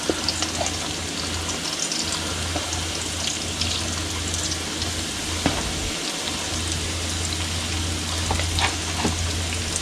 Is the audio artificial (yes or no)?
no